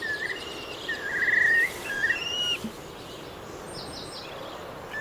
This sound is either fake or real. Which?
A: real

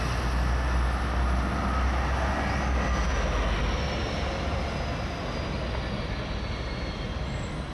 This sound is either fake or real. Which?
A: real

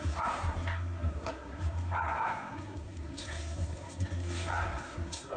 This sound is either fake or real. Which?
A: fake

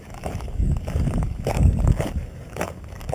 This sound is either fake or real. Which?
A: fake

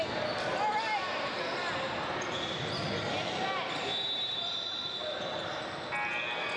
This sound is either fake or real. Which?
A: real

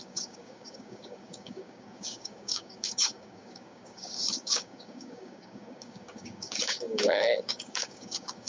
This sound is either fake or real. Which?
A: fake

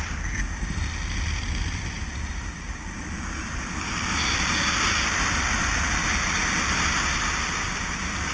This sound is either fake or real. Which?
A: real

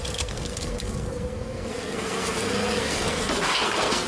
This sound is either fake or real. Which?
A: fake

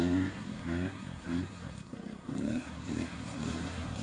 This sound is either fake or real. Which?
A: fake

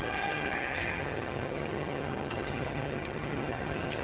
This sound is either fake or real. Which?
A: fake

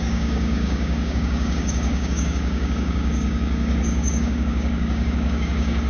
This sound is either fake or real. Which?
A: fake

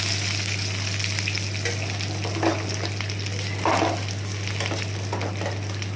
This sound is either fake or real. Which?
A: real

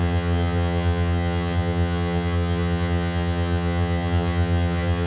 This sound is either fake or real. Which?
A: fake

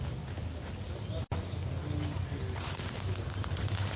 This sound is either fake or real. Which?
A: real